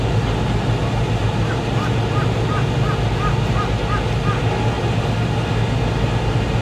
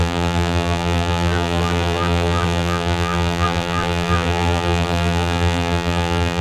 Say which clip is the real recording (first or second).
first